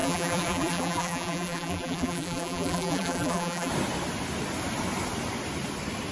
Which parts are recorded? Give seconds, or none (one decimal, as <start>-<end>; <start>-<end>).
3.7-6.1